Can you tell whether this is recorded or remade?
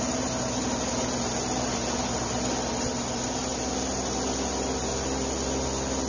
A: recorded